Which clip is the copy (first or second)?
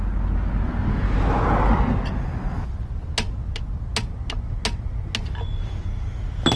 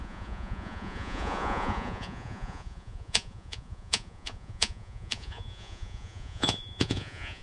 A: second